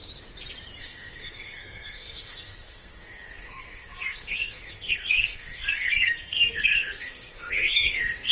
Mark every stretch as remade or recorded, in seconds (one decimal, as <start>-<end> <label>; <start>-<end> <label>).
0.0-0.8 recorded; 0.8-8.3 remade